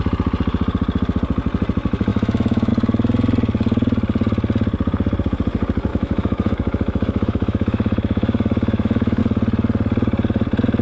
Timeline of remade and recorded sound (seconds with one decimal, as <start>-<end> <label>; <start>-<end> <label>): 0.0-2.1 recorded; 2.1-2.7 remade; 2.7-5.9 recorded; 5.9-9.2 remade; 9.2-10.8 recorded